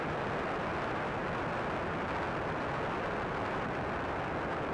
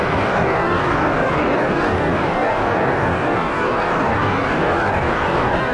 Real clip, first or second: first